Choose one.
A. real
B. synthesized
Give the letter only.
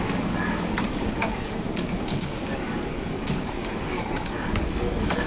B